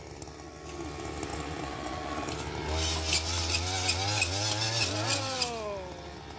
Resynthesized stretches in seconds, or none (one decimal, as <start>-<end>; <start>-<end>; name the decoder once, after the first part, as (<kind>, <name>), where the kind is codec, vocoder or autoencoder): 1.3-2.3 (vocoder, Vocos)

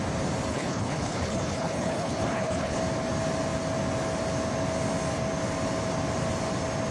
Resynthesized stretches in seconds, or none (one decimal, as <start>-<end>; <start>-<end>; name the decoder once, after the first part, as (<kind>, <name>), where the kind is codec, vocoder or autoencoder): 0.5-2.8 (codec, HILCodec)

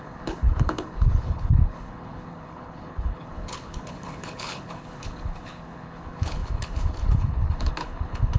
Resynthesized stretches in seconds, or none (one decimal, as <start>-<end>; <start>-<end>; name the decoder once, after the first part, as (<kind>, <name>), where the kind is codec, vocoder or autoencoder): 0.0-8.4 (codec, HILCodec)